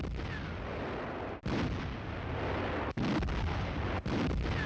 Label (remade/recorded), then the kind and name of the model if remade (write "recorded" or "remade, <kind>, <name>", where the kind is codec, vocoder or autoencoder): recorded